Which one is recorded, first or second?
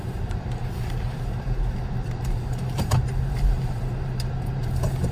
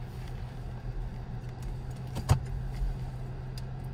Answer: second